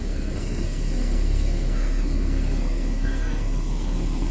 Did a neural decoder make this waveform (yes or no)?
yes